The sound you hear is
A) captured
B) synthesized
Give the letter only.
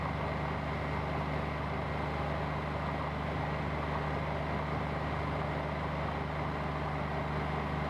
A